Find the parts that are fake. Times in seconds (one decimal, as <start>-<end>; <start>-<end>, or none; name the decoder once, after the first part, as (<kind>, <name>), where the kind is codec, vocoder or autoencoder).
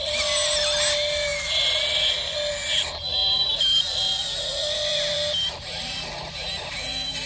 3.2-3.8 (vocoder, BigVGAN v2); 4.9-7.3